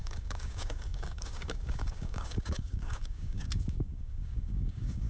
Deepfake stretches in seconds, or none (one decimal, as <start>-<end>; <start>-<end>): 0.0-5.1